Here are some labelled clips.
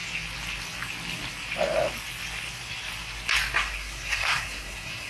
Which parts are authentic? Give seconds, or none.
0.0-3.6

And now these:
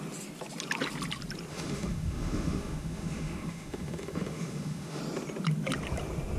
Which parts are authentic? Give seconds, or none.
0.0-1.5; 5.0-6.4

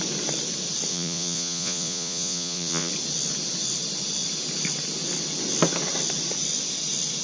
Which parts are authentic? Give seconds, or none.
0.0-0.9; 2.9-7.2

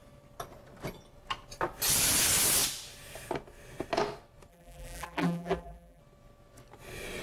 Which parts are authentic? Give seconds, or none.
0.0-4.5; 6.0-7.2

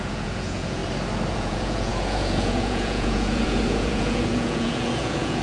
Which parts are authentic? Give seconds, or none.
0.8-1.3

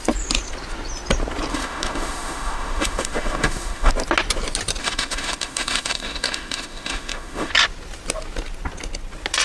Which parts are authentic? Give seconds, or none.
0.0-1.5; 3.9-4.8; 7.5-9.4

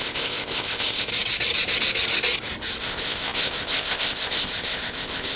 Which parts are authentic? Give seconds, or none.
1.1-2.8